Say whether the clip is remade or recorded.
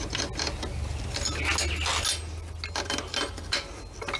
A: recorded